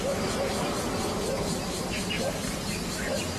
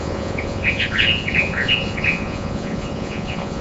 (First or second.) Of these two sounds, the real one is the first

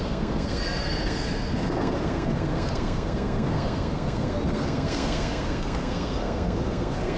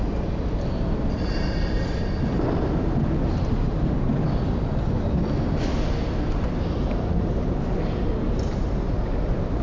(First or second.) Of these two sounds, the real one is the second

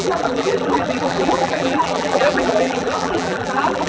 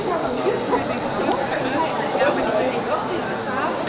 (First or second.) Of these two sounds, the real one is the second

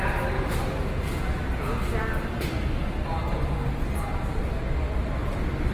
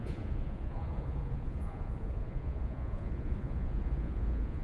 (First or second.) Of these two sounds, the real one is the first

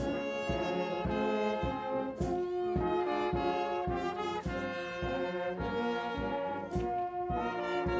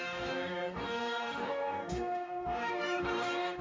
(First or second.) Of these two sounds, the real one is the first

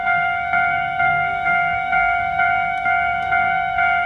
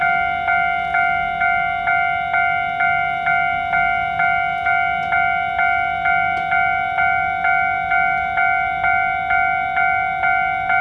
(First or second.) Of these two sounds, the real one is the second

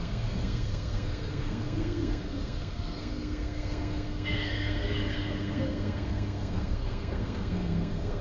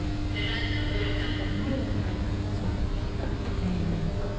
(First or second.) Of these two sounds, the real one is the second